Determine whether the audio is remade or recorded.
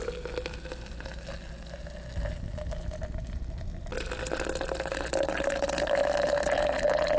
recorded